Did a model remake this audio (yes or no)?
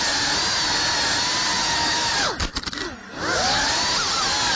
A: no